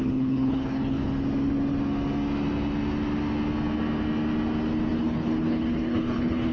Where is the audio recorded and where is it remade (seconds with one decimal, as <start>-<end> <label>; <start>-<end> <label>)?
0.0-1.0 remade; 1.0-4.9 recorded; 4.9-6.5 remade